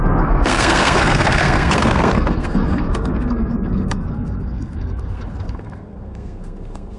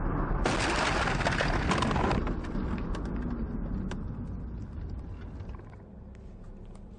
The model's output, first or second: first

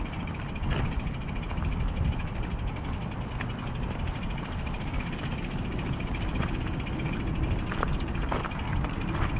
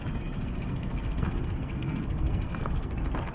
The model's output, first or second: second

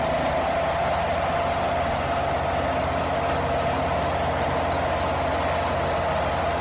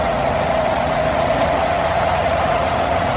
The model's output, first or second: second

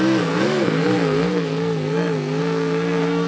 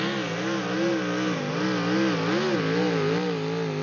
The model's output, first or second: first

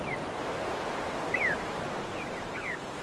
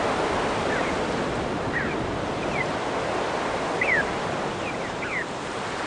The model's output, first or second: first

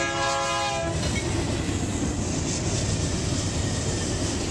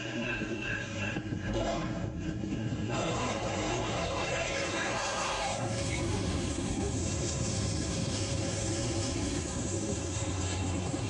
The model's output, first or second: second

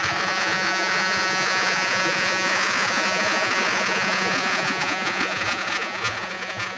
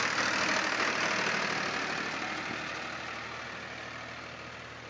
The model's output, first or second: first